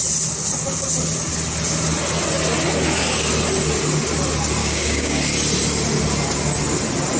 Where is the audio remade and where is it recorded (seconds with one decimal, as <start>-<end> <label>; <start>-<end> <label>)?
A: 0.0-4.6 recorded; 4.6-5.2 remade; 5.2-7.2 recorded